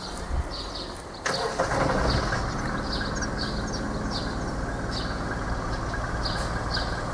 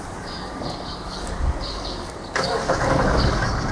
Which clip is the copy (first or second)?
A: second